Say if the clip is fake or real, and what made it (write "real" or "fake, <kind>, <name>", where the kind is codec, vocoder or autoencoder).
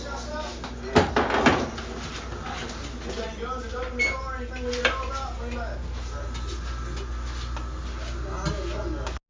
real